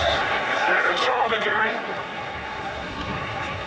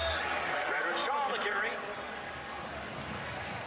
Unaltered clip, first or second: second